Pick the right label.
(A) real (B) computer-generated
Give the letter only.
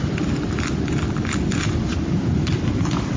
A